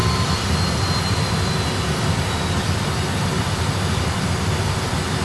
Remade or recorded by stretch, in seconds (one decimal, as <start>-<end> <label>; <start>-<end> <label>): 0.0-5.2 recorded